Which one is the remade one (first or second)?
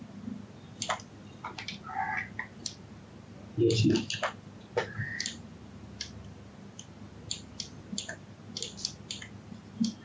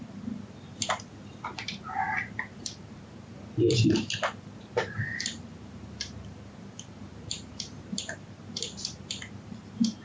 second